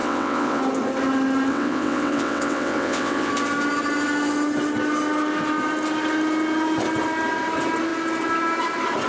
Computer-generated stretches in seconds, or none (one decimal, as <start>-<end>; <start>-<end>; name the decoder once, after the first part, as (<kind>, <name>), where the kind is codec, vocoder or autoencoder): 0.0-0.6 (vocoder, WaveNeXt); 1.5-3.3